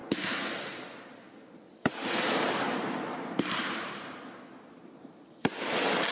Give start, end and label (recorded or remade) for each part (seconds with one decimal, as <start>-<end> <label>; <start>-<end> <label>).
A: 0.0-2.0 recorded; 2.0-5.5 remade; 5.5-6.1 recorded